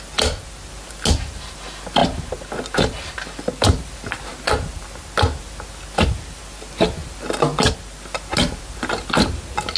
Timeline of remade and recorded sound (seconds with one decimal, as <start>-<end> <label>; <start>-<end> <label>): 0.0-9.8 recorded